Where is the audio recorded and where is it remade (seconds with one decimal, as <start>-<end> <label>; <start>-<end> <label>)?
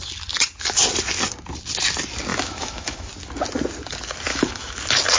0.0-2.3 recorded; 2.3-3.1 remade; 3.1-4.3 recorded; 4.3-4.8 remade; 4.8-5.2 recorded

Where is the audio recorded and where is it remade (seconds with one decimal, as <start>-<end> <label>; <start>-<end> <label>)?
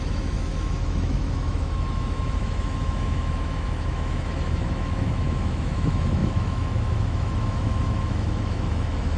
0.0-9.2 remade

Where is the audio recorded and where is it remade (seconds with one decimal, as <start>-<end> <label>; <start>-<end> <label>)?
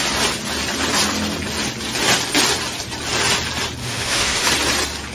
0.0-3.8 recorded; 3.8-4.5 remade; 4.5-5.1 recorded